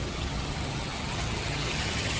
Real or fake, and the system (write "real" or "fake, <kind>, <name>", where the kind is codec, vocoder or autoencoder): fake, vocoder, HiFi-GAN